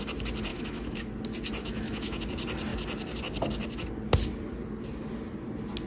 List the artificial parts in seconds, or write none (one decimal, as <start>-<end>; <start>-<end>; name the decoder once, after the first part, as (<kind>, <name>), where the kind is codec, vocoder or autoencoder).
0.5-1.1 (autoencoder, DAC-VAE); 1.6-2.2

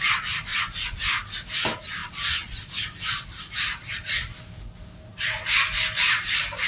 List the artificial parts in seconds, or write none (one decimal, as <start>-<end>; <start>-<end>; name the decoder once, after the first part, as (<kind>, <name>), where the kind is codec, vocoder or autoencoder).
0.0-0.5 (vocoder, BigVGAN v2); 1.5-5.1; 6.2-6.7